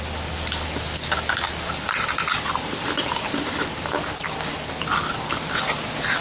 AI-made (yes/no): no